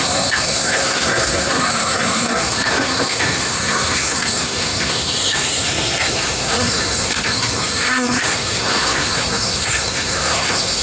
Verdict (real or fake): fake